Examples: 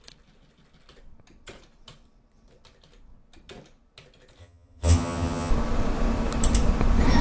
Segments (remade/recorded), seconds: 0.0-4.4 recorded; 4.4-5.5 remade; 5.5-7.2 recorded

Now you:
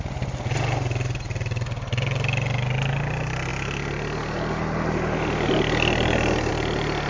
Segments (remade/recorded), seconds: 0.0-7.1 recorded

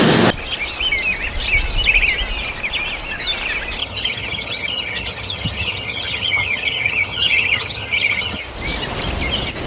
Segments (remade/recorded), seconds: 0.0-3.8 recorded; 3.8-8.4 remade; 8.4-9.7 recorded

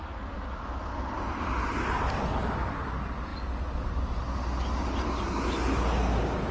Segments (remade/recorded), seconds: 0.0-6.5 recorded

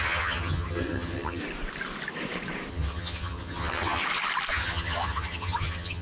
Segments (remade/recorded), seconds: 0.0-1.4 remade; 1.4-2.7 recorded; 2.7-4.0 remade; 4.0-4.5 recorded; 4.5-6.0 remade

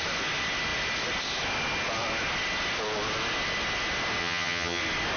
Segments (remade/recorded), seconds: 0.0-4.2 recorded; 4.2-4.8 remade; 4.8-5.2 recorded

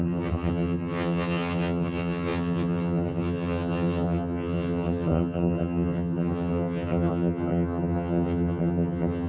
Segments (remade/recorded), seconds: 0.0-9.3 remade